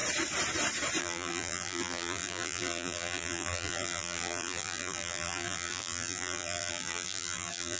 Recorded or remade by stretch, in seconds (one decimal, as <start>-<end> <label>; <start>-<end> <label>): 0.0-1.0 recorded; 1.0-7.8 remade